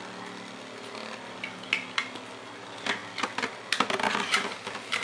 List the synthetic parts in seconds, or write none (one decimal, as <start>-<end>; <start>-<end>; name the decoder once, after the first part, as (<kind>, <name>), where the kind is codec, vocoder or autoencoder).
none

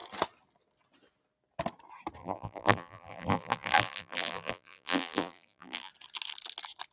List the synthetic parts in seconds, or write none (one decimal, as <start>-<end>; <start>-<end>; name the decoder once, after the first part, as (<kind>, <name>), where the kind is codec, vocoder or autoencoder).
2.2-5.9 (vocoder, BigVGAN v2)

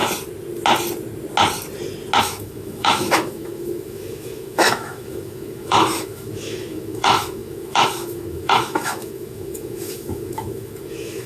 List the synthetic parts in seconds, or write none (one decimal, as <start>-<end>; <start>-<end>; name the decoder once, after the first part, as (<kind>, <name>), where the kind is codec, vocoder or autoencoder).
2.2-11.3 (autoencoder, DAC-VAE)

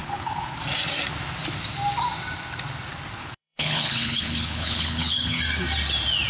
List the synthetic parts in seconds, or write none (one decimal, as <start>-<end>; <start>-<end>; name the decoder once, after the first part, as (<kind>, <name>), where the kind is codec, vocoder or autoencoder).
0.0-0.6 (codec, HILCodec); 3.2-5.4

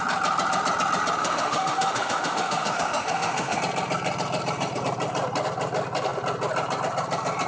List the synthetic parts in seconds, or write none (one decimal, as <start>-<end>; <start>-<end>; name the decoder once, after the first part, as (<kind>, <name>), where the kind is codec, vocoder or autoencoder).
1.2-3.6 (autoencoder, DAC-VAE)